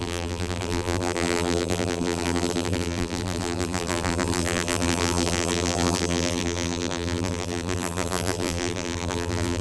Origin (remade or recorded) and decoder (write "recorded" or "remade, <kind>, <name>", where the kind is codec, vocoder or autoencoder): remade, vocoder, BigVGAN v2